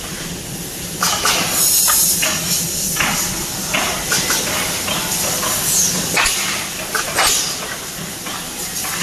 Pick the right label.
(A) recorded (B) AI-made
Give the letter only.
A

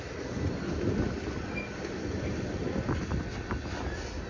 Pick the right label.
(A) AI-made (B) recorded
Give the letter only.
B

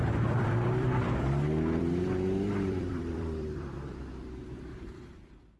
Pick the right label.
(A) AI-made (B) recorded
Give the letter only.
A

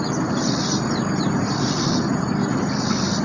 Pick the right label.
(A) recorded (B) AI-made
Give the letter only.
A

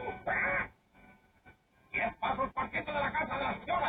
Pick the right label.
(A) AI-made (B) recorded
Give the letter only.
A